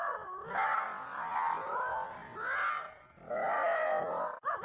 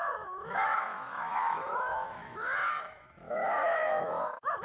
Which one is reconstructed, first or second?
second